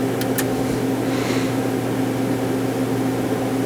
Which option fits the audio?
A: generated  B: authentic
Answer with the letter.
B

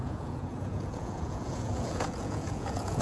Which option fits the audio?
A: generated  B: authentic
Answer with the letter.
A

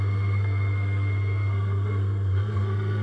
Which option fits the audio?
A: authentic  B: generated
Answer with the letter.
B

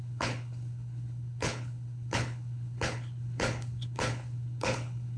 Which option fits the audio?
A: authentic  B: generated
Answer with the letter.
B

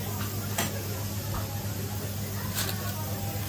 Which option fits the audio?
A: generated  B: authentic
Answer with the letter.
B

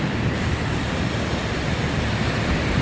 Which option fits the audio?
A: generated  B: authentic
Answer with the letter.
B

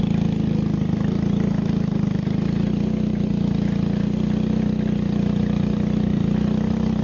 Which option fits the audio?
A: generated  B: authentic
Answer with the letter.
B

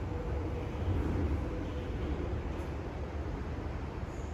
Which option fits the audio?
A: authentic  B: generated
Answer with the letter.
A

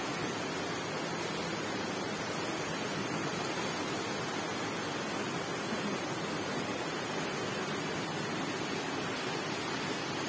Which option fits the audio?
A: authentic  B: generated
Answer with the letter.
A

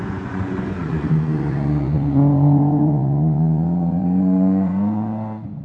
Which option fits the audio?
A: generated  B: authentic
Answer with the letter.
A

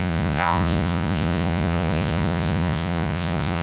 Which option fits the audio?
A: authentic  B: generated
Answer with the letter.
B